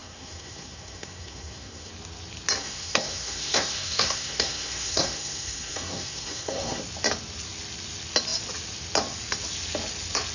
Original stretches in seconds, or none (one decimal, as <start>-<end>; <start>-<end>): 1.9-2.6; 6.8-10.3